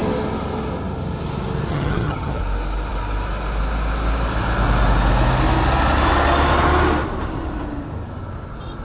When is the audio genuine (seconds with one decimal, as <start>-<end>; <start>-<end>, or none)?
0.0-1.7; 2.4-8.8